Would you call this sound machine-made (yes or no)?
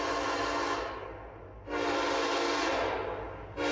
no